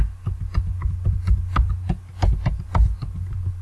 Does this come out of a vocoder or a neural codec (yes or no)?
no